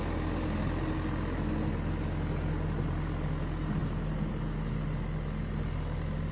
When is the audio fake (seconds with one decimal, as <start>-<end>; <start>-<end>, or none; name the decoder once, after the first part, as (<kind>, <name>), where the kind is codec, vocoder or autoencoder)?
none